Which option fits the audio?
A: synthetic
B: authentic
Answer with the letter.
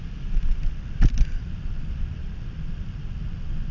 A